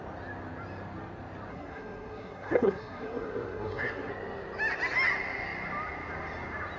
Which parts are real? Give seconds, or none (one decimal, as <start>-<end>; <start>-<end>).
0.0-1.5; 4.1-6.8